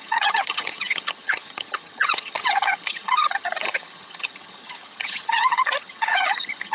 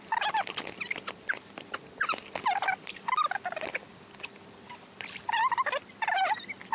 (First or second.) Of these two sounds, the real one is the second